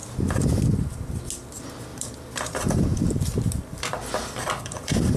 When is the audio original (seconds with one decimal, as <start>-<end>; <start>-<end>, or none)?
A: 0.0-1.9